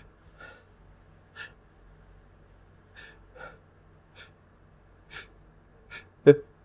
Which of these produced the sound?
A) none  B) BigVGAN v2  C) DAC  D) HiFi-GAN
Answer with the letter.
A